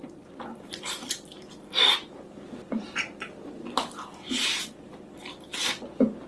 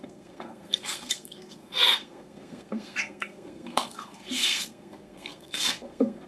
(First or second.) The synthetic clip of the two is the second